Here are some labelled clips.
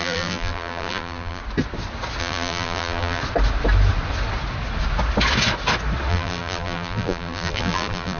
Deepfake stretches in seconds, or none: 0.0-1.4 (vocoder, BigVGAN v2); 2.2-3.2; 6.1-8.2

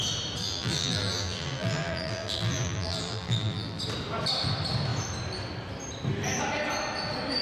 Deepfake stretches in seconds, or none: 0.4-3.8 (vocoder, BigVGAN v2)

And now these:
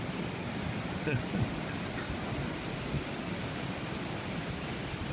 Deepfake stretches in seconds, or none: 0.0-2.0 (vocoder, BigVGAN v2); 3.2-5.1

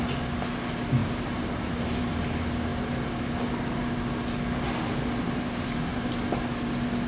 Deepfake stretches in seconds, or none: 1.0-2.1 (vocoder, BigVGAN v2)

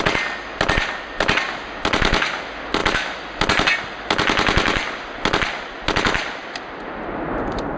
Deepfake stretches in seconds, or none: none

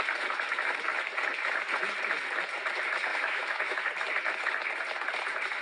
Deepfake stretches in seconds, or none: 3.1-3.8 (autoencoder, DAC-VAE)

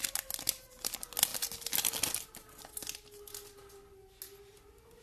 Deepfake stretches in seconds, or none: none

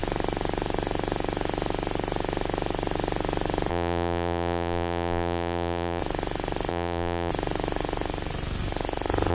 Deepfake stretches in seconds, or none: 3.7-6.0 (vocoder, BigVGAN v2); 6.7-7.3